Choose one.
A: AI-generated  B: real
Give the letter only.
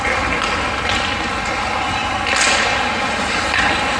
B